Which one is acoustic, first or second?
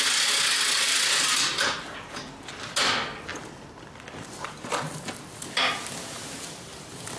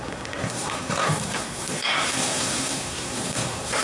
first